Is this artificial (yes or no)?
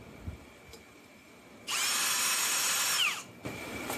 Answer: yes